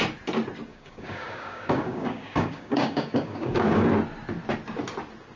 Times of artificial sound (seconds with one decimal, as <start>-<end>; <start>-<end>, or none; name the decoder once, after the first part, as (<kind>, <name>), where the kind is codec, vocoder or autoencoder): 0.7-3.9 (codec, DAC)